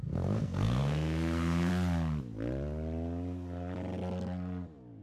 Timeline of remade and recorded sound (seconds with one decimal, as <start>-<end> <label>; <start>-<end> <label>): 0.0-1.7 remade; 1.7-5.0 recorded